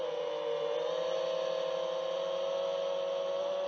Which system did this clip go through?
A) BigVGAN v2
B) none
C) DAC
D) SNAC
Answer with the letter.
B